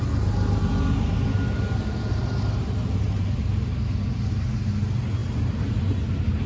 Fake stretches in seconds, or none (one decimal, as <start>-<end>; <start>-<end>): none